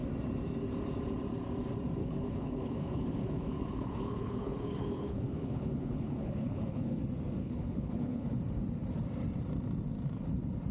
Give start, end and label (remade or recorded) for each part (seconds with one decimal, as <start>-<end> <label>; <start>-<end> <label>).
0.0-2.0 recorded; 2.0-7.0 remade; 7.0-7.4 recorded; 7.4-8.4 remade; 8.4-10.7 recorded